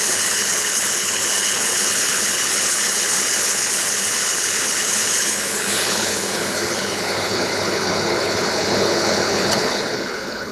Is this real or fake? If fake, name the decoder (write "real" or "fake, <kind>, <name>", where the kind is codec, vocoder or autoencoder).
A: fake, codec, HILCodec